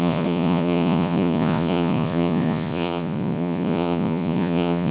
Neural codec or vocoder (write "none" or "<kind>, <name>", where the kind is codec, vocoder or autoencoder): vocoder, Vocos